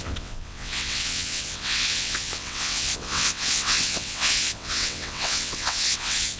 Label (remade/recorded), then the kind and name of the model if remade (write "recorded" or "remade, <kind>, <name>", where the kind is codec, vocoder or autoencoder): remade, vocoder, WaveNeXt